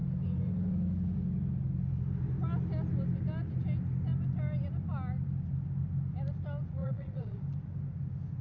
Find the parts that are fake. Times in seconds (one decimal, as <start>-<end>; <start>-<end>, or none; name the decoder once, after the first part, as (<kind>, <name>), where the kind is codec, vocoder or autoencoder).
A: 6.8-7.4 (vocoder, Vocos)